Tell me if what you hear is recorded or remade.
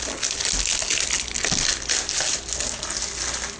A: recorded